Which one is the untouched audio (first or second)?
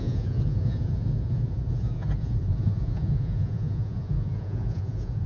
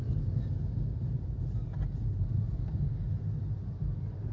second